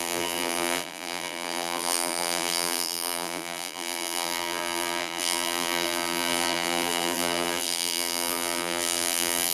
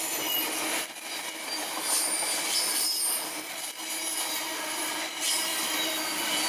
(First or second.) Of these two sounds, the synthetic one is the first